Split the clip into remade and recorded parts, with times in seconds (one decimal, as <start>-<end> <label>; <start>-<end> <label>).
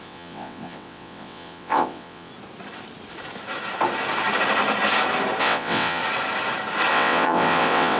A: 0.0-2.3 remade; 2.3-5.4 recorded; 5.4-6.0 remade; 6.0-6.9 recorded; 6.9-8.0 remade